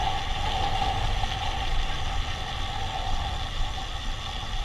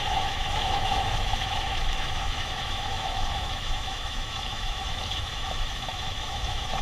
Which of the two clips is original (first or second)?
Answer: first